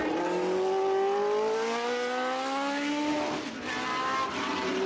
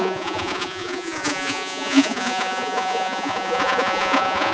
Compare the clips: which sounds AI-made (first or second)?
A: second